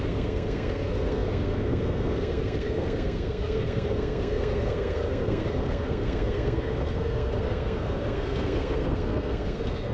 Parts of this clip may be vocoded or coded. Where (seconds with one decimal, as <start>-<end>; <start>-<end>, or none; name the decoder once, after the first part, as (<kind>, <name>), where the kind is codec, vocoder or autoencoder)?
0.0-9.9 (codec, SNAC)